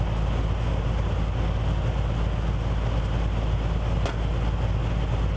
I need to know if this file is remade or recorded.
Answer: recorded